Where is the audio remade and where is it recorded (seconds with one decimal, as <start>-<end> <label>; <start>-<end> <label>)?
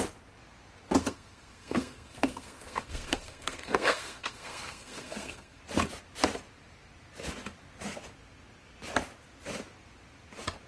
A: 0.0-1.0 recorded; 1.0-5.6 remade; 5.6-10.7 recorded